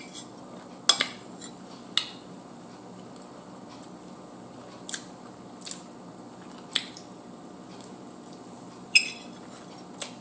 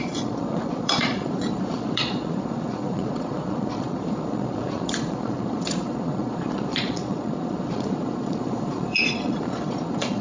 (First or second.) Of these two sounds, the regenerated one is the second